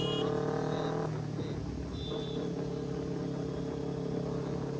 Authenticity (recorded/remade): recorded